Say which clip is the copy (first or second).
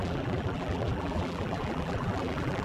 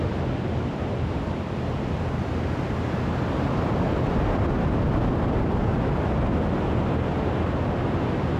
first